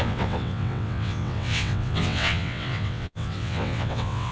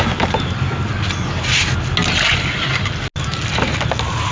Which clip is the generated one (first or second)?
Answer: first